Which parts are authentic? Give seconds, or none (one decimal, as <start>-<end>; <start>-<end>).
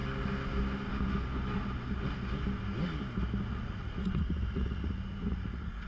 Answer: 0.0-3.5